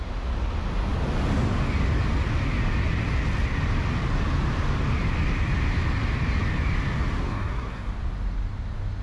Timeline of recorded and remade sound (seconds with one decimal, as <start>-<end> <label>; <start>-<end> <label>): 0.0-7.2 recorded; 7.2-7.9 remade; 7.9-9.0 recorded